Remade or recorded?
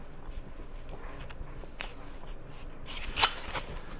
remade